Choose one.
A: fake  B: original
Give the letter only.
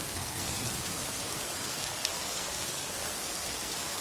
A